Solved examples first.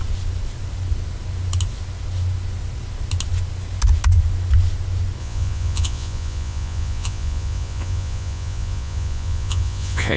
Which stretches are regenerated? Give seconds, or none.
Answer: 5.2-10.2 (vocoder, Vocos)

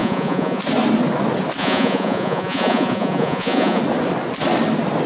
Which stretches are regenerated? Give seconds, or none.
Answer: 0.0-0.6 (vocoder, Vocos); 1.6-3.8